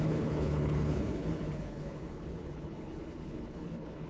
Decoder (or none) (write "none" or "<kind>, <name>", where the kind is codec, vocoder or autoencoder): codec, HILCodec